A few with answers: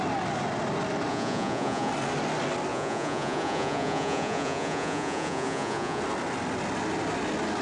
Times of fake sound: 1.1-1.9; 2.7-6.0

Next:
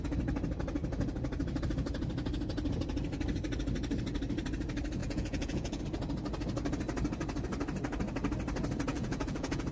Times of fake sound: 5.0-5.8; 8.9-9.7

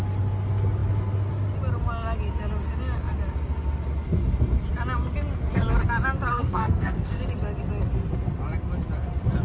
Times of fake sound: 6.3-7.2

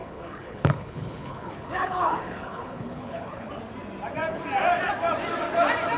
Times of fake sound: 0.0-3.5

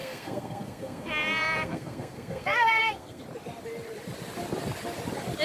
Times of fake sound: 0.0-3.2

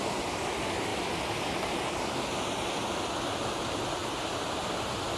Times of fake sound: none